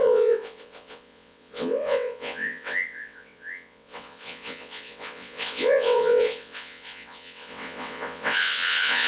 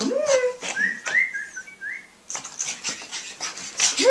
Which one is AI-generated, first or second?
first